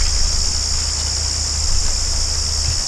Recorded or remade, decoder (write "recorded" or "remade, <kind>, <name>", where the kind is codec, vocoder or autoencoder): recorded